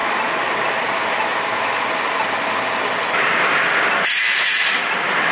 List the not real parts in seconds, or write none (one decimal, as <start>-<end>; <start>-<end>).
none